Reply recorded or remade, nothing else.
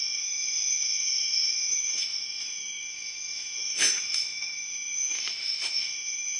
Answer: remade